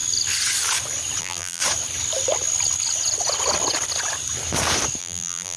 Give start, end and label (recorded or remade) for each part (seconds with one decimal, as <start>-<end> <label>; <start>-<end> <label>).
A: 0.0-1.2 recorded; 1.2-1.6 remade; 1.6-5.0 recorded; 5.0-5.6 remade